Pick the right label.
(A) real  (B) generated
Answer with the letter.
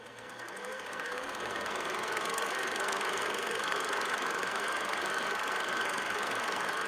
B